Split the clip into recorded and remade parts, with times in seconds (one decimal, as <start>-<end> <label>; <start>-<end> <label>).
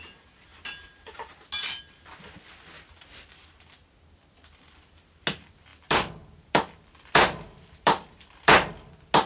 0.0-5.7 recorded; 5.7-8.7 remade; 8.7-9.3 recorded